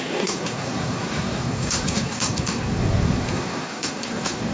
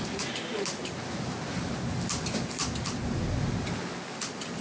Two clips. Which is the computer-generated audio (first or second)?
first